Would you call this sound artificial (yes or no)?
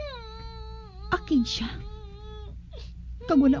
no